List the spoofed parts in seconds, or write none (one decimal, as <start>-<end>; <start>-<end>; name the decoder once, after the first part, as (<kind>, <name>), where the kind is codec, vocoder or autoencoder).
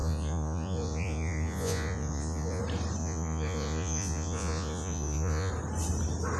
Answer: 0.0-2.6 (vocoder, Vocos); 3.0-5.5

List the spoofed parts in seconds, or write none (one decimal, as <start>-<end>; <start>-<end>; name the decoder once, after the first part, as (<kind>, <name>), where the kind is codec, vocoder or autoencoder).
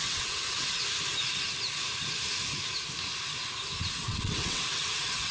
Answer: 0.0-0.8 (vocoder, WaveNeXt); 4.0-5.3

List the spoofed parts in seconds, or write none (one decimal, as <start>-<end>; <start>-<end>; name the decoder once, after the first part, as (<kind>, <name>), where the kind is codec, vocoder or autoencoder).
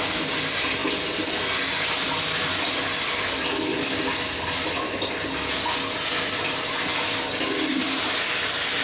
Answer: none